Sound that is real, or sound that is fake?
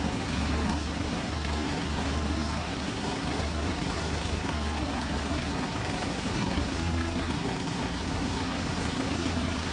fake